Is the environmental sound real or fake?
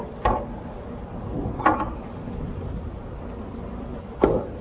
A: real